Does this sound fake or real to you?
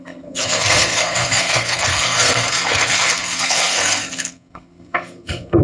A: fake